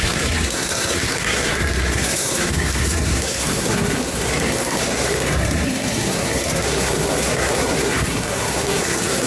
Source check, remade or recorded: remade